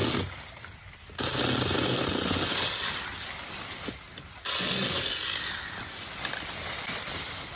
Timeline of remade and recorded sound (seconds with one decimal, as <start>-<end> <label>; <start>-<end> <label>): 0.0-7.6 recorded